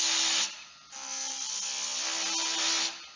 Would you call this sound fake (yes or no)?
no